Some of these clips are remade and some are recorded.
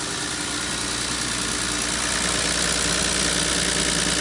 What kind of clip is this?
recorded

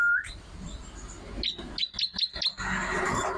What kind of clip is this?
recorded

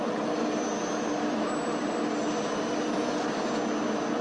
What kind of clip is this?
recorded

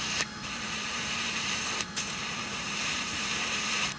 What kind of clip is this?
remade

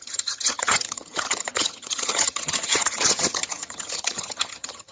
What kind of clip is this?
remade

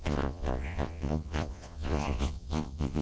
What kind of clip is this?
remade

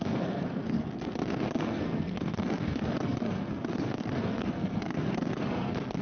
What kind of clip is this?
remade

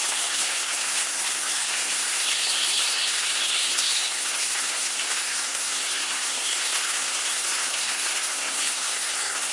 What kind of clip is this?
remade